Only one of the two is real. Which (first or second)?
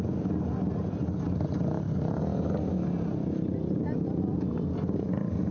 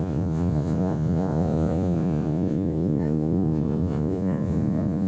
first